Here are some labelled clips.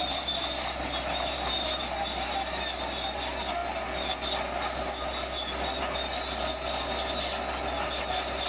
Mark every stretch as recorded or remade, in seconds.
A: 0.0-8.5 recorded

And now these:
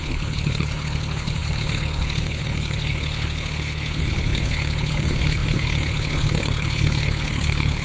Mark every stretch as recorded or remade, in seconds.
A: 0.0-7.8 remade

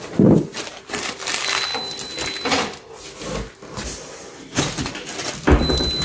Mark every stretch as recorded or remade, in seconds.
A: 0.0-6.0 recorded

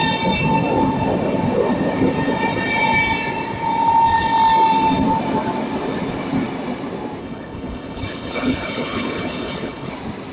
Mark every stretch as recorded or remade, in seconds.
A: 0.0-7.2 recorded; 7.2-9.9 remade; 9.9-10.3 recorded